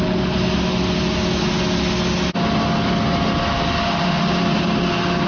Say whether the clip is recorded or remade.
recorded